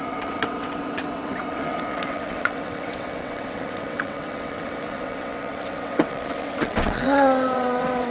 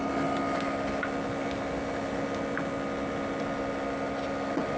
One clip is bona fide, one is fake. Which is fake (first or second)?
first